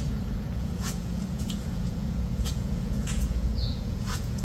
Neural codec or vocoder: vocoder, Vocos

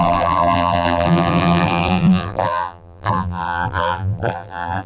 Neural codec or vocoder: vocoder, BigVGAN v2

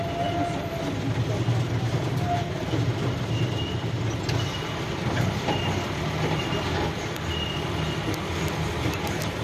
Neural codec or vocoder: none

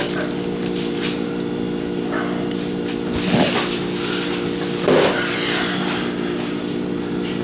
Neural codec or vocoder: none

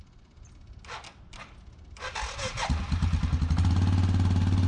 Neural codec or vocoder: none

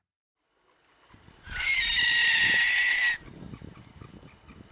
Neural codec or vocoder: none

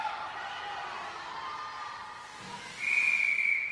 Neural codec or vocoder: none